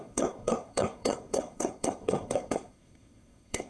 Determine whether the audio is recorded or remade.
remade